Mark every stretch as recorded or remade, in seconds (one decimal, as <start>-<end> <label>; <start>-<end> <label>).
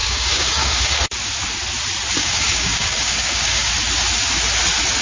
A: 0.0-1.0 remade; 1.0-2.2 recorded; 2.2-3.7 remade; 3.7-5.0 recorded